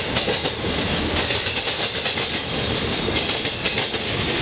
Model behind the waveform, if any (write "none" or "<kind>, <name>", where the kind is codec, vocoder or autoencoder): none